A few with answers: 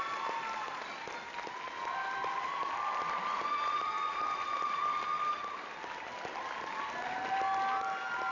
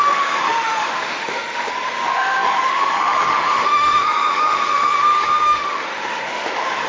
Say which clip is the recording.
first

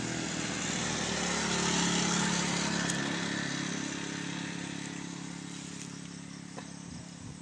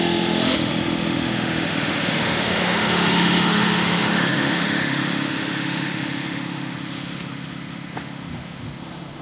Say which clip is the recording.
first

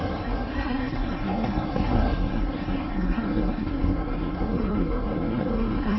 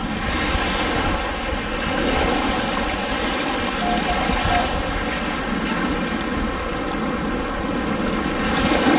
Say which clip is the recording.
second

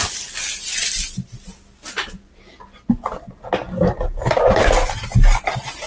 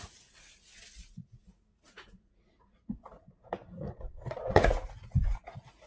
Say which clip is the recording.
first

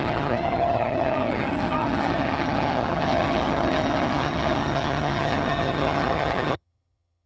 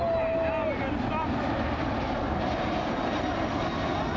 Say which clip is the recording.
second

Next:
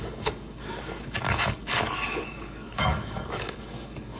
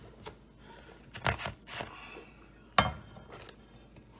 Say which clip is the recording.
second